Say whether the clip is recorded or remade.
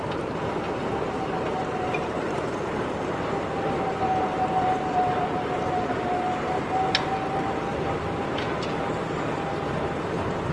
remade